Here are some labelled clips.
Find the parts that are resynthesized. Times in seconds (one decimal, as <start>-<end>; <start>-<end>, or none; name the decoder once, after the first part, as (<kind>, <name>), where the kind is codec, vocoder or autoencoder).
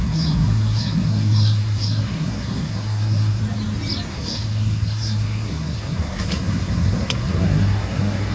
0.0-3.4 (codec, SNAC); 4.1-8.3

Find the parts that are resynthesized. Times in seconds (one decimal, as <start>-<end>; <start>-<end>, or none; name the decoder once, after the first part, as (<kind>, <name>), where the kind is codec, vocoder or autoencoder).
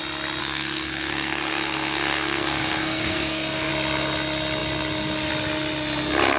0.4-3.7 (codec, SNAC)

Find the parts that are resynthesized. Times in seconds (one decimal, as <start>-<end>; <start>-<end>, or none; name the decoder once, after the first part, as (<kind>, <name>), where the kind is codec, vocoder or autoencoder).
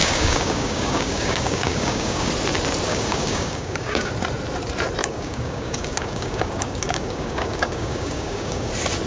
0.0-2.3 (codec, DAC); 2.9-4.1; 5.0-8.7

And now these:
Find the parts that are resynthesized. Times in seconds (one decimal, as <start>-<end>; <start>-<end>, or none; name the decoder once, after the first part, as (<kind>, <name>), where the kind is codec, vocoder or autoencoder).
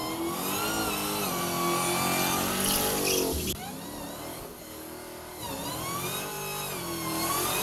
4.3-5.4 (codec, DAC)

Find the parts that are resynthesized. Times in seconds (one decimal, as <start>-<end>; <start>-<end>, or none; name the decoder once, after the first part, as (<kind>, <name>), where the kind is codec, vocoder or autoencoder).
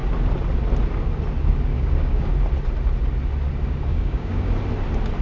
1.7-2.3 (codec, DAC); 3.9-4.5